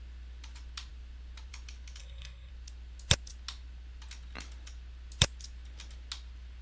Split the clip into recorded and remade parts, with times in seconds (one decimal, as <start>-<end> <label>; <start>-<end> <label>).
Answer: 0.0-2.0 recorded; 2.0-2.5 remade; 2.5-6.6 recorded